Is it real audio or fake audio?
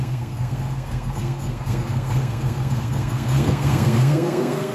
fake